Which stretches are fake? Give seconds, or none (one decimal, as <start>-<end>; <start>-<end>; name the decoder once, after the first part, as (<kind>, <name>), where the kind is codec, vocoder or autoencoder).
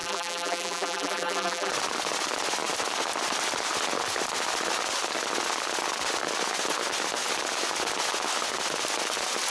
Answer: 0.0-1.7 (vocoder, BigVGAN v2)